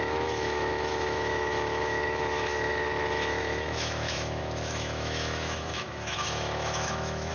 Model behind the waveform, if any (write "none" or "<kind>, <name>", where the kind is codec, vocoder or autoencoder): autoencoder, DAC-VAE